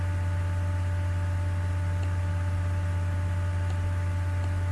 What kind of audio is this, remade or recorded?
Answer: recorded